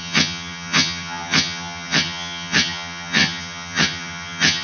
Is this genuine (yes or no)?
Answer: no